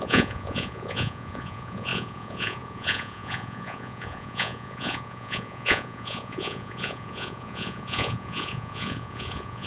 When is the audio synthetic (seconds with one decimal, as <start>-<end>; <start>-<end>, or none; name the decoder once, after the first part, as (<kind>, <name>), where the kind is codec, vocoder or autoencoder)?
0.0-9.7 (vocoder, Vocos)